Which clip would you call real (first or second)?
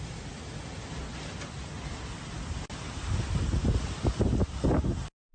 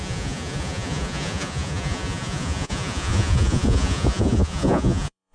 first